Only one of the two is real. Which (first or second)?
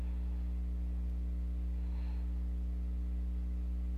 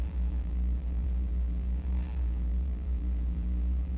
first